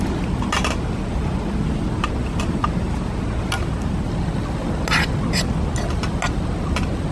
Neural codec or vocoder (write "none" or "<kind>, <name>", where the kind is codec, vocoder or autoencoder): none